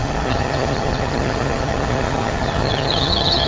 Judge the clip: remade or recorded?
remade